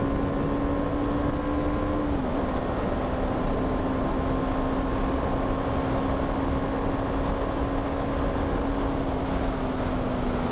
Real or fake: real